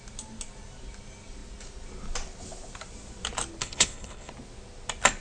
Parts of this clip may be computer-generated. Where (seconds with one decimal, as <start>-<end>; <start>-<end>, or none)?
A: 3.6-4.3